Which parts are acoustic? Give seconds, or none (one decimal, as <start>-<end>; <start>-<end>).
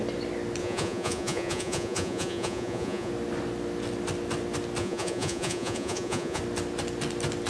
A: 0.0-0.6; 3.1-4.8; 6.4-7.5